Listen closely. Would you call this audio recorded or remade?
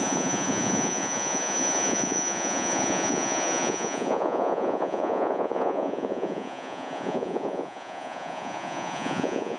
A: remade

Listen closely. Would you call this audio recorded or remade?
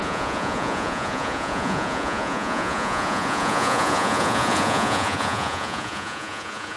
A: remade